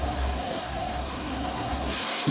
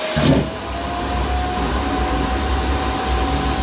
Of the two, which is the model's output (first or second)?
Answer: first